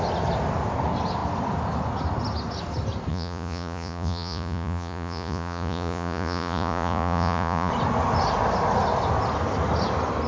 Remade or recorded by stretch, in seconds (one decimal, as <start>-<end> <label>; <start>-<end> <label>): 0.0-3.1 recorded; 3.1-7.7 remade; 7.7-10.3 recorded